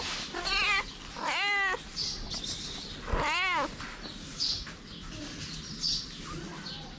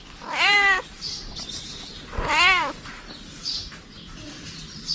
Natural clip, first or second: first